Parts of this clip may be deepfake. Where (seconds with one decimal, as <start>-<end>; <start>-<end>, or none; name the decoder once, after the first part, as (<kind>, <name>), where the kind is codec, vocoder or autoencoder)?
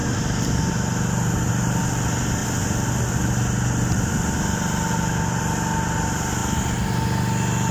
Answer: none